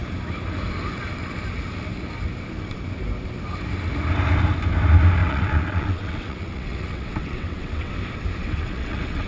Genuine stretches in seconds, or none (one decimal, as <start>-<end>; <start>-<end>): 0.0-5.2; 7.9-8.4